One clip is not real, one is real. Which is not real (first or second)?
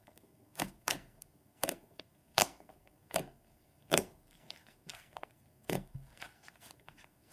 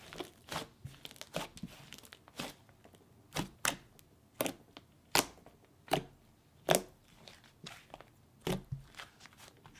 first